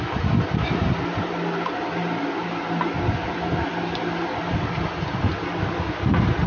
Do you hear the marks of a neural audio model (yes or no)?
no